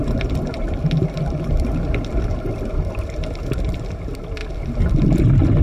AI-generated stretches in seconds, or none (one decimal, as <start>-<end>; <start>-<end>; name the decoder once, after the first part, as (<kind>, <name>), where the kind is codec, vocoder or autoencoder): 4.4-5.6 (vocoder, BigVGAN v2)